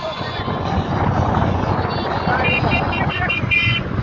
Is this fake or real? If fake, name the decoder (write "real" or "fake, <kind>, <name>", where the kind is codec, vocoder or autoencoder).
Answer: fake, vocoder, Vocos